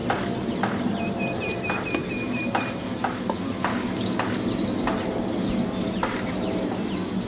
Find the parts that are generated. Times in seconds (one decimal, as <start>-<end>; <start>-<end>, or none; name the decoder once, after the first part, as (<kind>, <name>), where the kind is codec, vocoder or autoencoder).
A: none